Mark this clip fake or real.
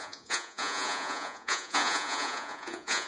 fake